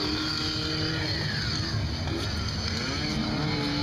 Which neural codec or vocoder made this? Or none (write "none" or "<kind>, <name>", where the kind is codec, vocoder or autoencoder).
none